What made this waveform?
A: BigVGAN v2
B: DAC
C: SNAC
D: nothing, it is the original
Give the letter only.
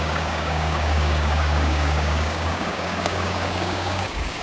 B